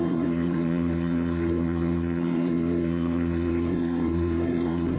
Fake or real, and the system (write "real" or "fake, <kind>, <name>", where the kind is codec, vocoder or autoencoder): fake, codec, SNAC